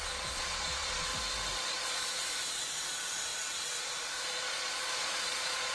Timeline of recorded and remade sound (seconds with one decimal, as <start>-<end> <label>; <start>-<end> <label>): 0.0-1.1 remade; 1.1-1.7 recorded; 1.7-5.7 remade